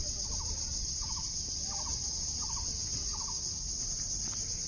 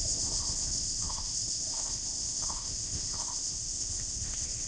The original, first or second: first